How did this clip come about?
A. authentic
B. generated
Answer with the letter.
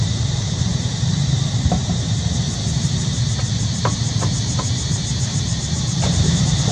B